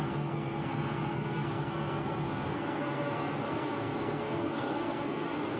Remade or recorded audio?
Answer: remade